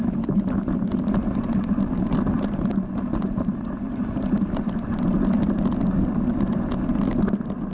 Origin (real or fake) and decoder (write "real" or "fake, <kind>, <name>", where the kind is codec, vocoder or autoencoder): real